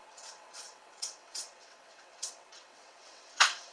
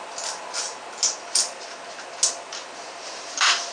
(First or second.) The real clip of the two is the second